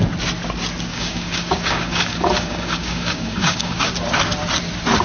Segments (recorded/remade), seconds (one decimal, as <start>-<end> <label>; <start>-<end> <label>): 0.0-0.9 recorded; 0.9-3.9 remade; 3.9-5.0 recorded